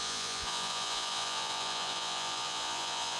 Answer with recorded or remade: remade